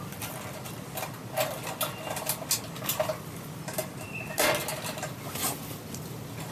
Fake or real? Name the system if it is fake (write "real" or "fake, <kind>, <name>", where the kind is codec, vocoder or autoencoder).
real